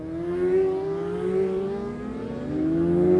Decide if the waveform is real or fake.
real